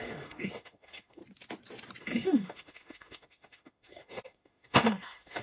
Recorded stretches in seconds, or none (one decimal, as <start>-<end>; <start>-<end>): 1.2-2.0